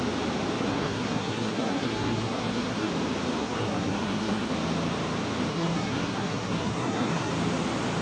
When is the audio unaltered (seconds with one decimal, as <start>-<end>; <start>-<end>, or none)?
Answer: 0.0-0.6; 2.9-3.4; 4.5-5.5; 7.3-8.0